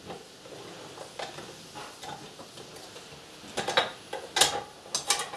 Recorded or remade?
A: recorded